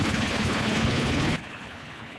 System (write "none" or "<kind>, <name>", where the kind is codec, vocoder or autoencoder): codec, HILCodec